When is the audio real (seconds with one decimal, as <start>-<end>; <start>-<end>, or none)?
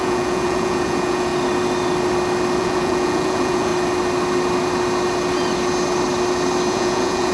1.3-2.6; 3.7-6.7